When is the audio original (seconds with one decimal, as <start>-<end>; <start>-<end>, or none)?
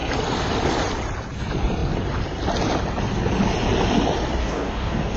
0.0-4.4